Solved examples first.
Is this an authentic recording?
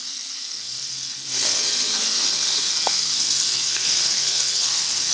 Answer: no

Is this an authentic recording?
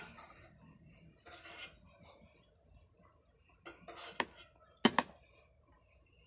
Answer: yes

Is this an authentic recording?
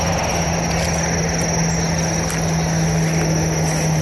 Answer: yes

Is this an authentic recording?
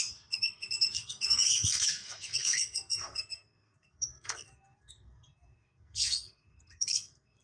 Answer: no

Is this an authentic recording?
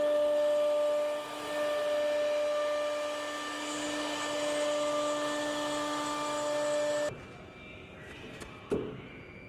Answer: yes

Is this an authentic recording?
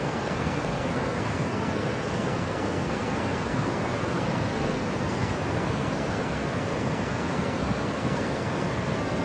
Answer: no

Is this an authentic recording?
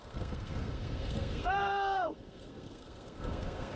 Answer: no